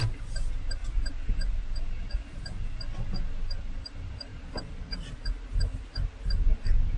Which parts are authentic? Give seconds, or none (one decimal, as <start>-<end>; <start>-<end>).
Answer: 0.0-7.0